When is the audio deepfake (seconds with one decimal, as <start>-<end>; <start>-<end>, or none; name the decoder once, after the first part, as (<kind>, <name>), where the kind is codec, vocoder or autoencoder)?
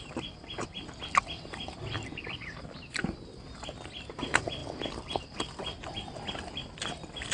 none